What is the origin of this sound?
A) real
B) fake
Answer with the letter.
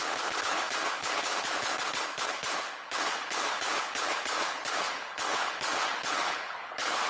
B